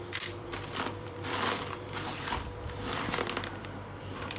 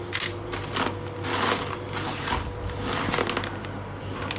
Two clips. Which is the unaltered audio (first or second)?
second